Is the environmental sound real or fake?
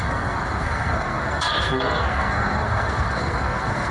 fake